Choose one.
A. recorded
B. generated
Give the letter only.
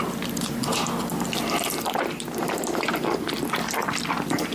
A